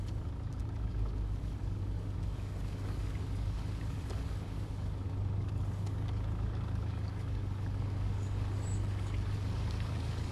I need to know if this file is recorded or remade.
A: remade